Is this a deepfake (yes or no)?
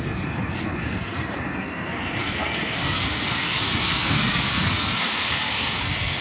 yes